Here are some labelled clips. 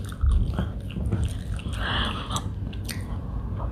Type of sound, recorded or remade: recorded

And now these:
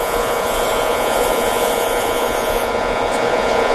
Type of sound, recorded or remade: remade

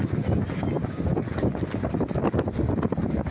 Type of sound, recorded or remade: recorded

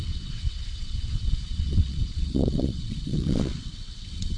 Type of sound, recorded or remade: remade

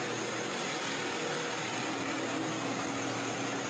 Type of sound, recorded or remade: recorded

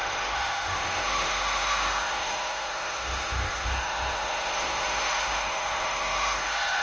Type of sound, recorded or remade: remade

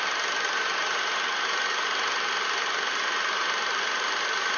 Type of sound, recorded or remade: recorded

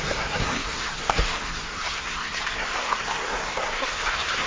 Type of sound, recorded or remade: remade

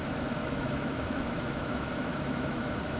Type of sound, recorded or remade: remade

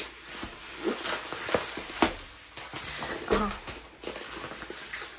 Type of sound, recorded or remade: recorded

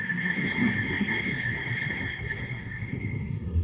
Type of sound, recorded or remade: remade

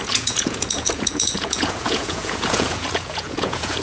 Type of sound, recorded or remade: remade